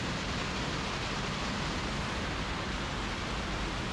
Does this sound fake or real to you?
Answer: real